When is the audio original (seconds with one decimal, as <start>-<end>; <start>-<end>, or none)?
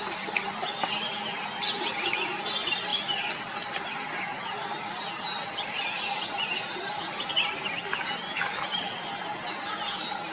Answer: 0.0-10.3